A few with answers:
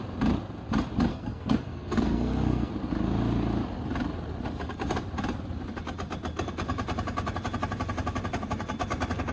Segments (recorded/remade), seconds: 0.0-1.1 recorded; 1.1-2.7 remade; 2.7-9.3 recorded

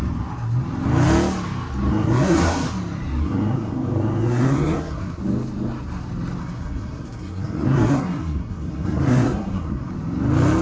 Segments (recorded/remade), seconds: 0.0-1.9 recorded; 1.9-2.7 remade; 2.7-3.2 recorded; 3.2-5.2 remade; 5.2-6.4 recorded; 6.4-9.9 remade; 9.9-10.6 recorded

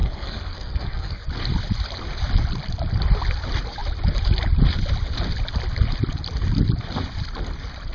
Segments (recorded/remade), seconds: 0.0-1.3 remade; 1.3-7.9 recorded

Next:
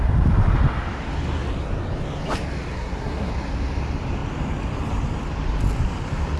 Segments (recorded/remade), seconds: 0.0-2.7 recorded; 2.7-3.3 remade; 3.3-6.4 recorded

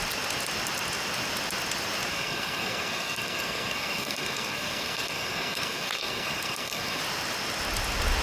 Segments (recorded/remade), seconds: 0.0-2.1 recorded; 2.1-7.0 remade; 7.0-8.2 recorded

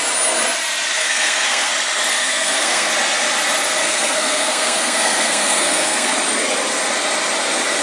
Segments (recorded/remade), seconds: 0.0-1.0 recorded; 1.0-1.7 remade; 1.7-2.1 recorded; 2.1-2.9 remade; 2.9-3.8 recorded; 3.8-6.1 remade; 6.1-7.8 recorded